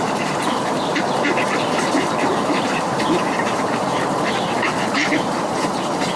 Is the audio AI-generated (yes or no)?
yes